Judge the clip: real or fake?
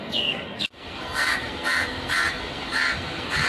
fake